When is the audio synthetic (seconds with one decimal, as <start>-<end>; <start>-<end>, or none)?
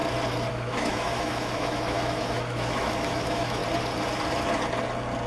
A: 0.5-3.6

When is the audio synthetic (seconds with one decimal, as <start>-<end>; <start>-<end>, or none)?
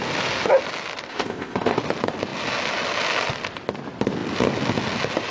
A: 1.1-1.8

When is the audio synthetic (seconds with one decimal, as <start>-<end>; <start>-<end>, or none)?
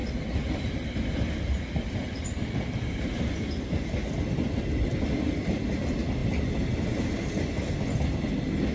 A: 0.0-2.6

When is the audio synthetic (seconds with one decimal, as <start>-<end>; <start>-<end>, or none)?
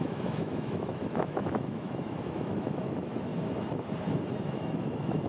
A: 0.0-3.3; 4.5-5.3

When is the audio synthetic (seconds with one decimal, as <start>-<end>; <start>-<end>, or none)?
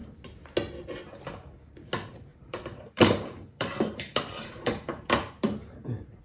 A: 2.3-6.2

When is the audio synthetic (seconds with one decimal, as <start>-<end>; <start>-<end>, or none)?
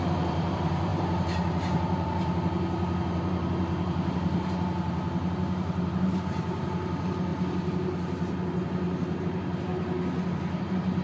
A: 0.0-7.3; 9.2-9.7; 10.6-11.0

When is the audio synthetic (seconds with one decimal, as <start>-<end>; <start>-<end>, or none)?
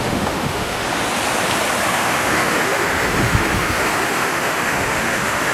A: 0.0-0.8; 1.9-5.5